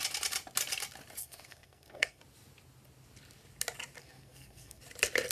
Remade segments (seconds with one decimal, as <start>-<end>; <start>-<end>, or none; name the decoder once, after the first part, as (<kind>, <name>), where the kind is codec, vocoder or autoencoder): 1.2-2.2 (codec, SNAC); 4.0-4.8